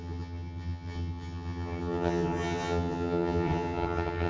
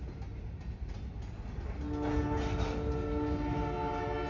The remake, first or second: first